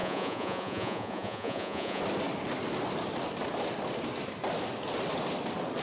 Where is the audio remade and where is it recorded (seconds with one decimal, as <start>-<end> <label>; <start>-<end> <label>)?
0.0-2.0 remade; 2.0-5.8 recorded